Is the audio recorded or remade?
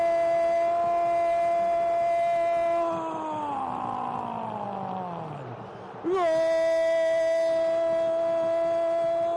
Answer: recorded